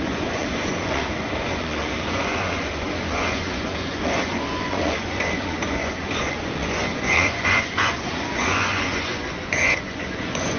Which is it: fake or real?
fake